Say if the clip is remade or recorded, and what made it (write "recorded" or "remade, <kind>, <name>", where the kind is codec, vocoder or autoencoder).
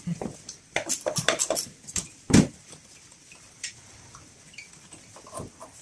recorded